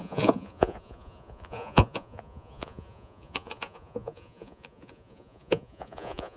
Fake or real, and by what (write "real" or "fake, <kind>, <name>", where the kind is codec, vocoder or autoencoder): fake, vocoder, Vocos